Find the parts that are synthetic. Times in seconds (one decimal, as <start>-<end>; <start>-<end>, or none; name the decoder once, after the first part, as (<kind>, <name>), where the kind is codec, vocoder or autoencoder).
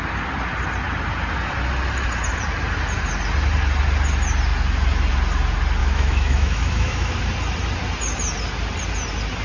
5.8-7.2 (autoencoder, DAC-VAE)